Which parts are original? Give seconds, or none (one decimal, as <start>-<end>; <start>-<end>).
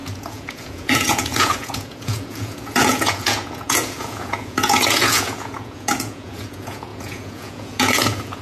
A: none